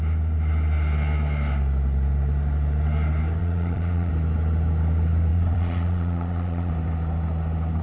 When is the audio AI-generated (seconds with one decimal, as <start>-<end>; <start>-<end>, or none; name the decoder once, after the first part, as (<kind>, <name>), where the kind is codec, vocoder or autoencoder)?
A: 3.4-4.1 (vocoder, Vocos); 5.3-6.7